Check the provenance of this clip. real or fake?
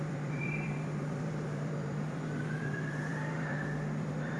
fake